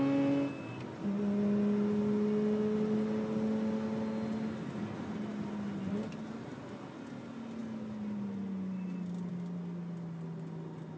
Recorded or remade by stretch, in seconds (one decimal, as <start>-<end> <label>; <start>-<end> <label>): 0.0-11.0 recorded